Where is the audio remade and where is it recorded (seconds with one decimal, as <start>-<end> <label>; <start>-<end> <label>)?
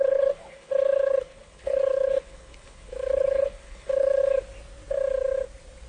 0.0-4.2 remade; 4.2-5.9 recorded